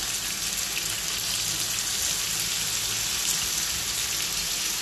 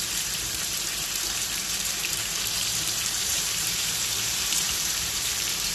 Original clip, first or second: first